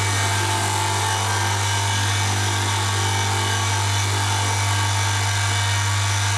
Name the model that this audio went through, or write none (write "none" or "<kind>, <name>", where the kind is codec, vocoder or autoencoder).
none